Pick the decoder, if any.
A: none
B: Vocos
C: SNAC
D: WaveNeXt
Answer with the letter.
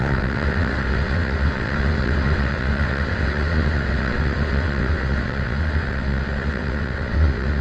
D